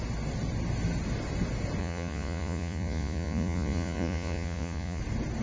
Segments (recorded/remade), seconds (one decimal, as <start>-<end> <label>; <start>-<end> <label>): 0.0-1.8 recorded; 1.8-5.0 remade; 5.0-5.4 recorded